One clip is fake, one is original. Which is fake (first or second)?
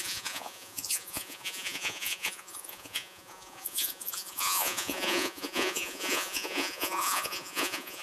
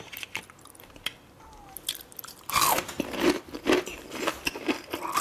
first